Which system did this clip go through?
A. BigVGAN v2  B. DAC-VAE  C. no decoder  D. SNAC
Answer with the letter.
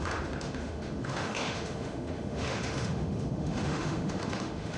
B